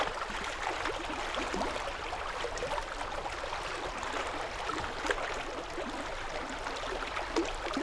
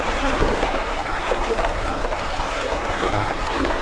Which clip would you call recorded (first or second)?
first